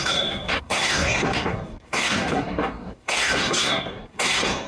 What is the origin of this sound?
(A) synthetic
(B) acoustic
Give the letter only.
A